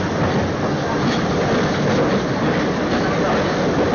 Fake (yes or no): no